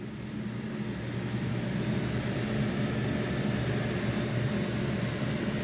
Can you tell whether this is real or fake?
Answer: real